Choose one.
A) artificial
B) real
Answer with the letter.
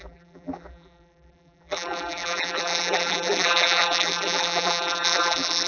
A